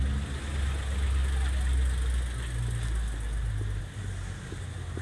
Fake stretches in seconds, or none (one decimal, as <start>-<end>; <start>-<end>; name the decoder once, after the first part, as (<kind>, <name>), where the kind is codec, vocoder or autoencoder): none